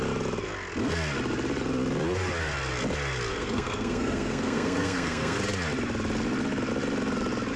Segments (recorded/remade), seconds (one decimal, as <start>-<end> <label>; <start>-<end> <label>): 0.0-3.3 recorded; 3.3-5.4 remade; 5.4-7.6 recorded